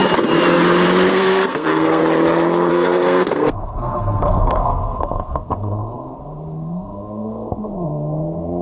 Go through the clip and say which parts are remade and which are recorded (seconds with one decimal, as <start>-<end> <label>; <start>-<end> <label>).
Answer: 0.0-1.1 recorded; 1.1-2.0 remade; 2.0-2.7 recorded; 2.7-8.6 remade